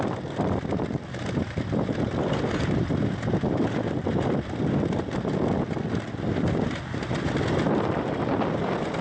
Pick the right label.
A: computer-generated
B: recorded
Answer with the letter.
A